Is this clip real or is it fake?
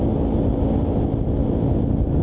real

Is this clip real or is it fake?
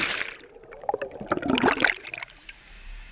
real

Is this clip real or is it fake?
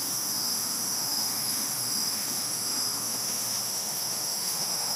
fake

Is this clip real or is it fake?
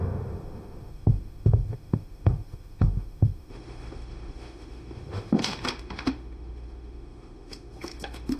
fake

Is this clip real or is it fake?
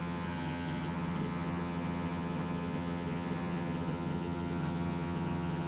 fake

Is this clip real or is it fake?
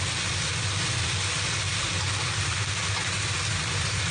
real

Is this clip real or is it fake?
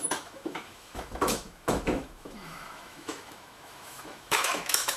fake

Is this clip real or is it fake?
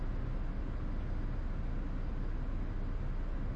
real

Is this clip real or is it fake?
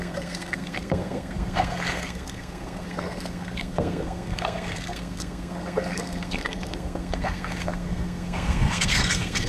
fake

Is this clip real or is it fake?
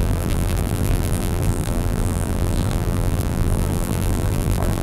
fake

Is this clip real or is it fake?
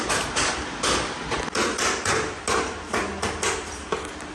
real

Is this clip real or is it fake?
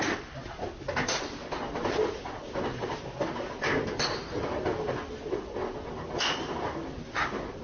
real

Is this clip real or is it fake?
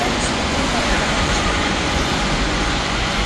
fake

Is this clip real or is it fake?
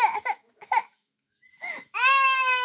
fake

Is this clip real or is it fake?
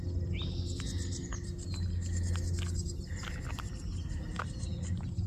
real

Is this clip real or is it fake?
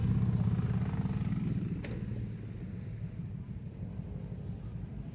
real